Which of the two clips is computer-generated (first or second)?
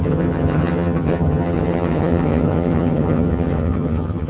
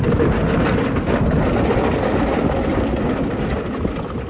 first